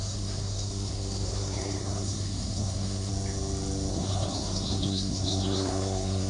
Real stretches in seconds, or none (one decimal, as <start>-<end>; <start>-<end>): 3.1-3.9